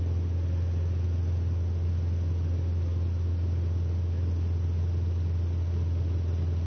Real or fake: real